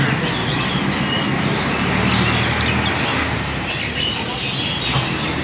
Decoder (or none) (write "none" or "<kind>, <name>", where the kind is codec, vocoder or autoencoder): none